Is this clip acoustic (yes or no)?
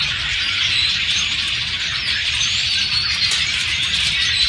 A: yes